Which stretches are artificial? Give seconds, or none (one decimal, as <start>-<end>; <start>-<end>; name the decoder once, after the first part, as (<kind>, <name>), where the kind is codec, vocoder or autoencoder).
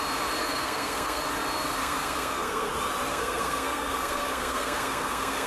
0.4-1.2 (codec, SNAC); 1.8-2.7; 3.1-5.5